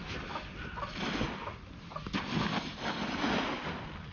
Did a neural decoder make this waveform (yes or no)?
no